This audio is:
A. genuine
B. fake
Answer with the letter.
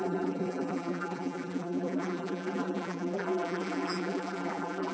B